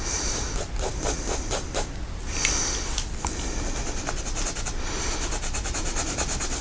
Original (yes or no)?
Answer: yes